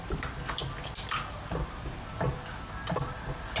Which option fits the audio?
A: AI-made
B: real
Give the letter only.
B